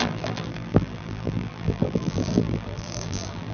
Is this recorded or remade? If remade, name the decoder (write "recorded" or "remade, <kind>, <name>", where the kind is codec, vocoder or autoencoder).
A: remade, vocoder, BigVGAN v2